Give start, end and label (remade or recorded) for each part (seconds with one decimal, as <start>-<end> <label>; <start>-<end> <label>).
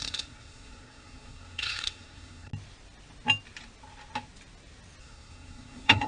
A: 0.0-2.5 remade; 2.5-5.0 recorded; 5.0-6.1 remade